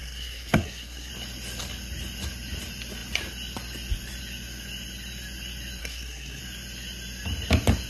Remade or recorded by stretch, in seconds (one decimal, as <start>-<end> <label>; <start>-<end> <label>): 0.0-1.1 remade; 1.1-5.8 recorded; 5.8-6.4 remade; 6.4-7.9 recorded